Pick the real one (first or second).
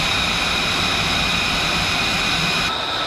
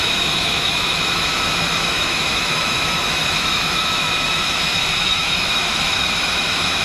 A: first